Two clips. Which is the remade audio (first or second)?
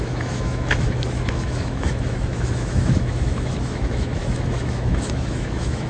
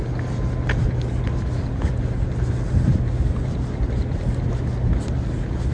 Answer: first